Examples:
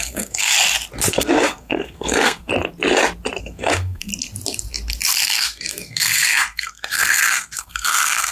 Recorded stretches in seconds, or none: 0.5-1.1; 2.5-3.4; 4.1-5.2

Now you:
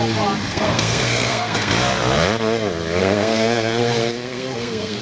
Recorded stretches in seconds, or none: 0.0-0.5; 1.7-3.0

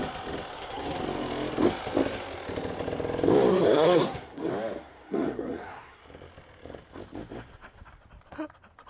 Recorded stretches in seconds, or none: 0.0-0.5; 1.0-3.5; 4.5-4.9; 6.0-8.9

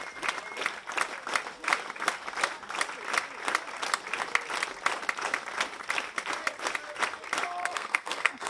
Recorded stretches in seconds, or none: 0.0-7.6

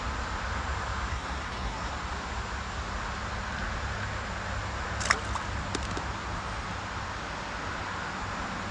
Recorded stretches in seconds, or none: 0.0-1.1; 1.9-8.7

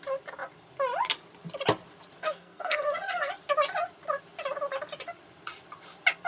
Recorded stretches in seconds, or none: 0.0-2.2; 3.3-6.3